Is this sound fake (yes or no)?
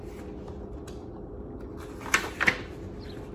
no